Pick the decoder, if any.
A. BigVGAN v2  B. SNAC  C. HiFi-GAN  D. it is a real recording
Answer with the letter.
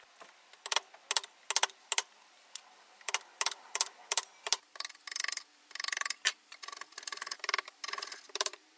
D